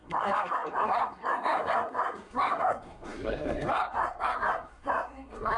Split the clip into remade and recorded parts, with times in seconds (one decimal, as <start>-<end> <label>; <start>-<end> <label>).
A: 0.0-5.6 remade